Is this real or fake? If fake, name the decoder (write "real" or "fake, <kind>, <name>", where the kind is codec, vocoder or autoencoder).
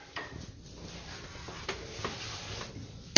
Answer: real